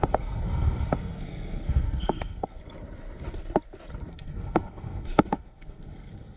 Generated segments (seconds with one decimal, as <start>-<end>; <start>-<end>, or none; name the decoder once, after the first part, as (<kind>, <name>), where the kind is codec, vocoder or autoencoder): 0.0-2.6 (codec, SNAC); 4.1-6.4